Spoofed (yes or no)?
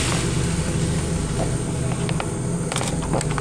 no